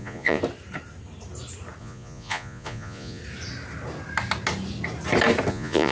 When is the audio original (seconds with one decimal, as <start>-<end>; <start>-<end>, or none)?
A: 0.4-1.8; 3.2-5.5